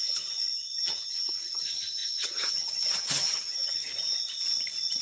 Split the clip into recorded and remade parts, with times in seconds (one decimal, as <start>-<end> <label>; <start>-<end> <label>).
0.0-3.9 remade; 3.9-5.0 recorded